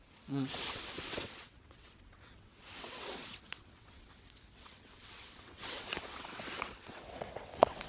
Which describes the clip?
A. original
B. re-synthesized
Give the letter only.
B